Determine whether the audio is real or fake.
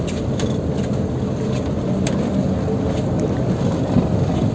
real